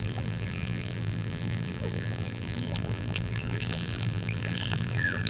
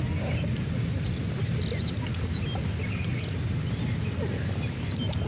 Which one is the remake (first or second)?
first